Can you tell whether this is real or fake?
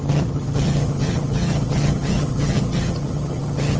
fake